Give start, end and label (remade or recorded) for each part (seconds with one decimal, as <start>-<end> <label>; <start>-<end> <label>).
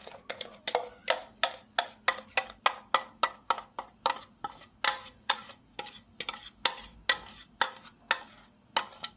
0.0-0.6 remade; 0.6-5.0 recorded; 5.0-5.6 remade; 5.6-9.2 recorded